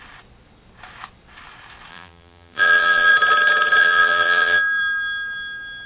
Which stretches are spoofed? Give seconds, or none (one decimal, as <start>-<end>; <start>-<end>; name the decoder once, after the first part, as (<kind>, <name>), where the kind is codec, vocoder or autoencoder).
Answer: 1.9-3.1 (vocoder, BigVGAN v2); 3.8-4.8